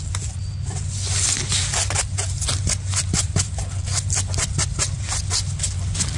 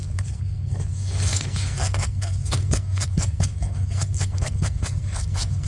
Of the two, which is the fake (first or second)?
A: second